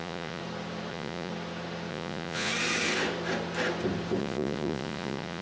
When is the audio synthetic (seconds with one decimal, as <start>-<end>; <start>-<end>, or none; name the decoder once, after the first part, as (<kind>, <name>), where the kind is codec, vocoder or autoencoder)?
0.0-0.4 (vocoder, Vocos); 0.9-1.3; 1.9-2.5; 4.2-5.4

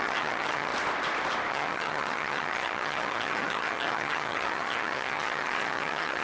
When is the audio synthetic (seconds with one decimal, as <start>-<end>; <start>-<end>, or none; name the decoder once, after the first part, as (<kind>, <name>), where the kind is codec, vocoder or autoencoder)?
0.0-0.7 (vocoder, HiFi-GAN); 1.5-6.2

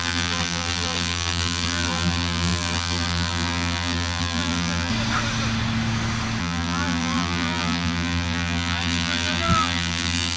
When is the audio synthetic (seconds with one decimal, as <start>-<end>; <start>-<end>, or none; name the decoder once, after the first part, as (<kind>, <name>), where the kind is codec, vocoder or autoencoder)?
0.0-4.9 (vocoder, BigVGAN v2); 6.4-10.4

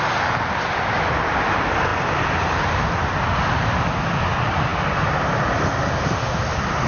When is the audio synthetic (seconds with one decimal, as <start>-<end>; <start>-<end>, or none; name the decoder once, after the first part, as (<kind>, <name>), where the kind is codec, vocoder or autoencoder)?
none

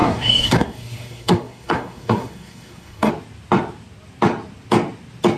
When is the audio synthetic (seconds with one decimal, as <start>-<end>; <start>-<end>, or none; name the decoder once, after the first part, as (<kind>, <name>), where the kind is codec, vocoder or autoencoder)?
0.0-3.1 (codec, SNAC)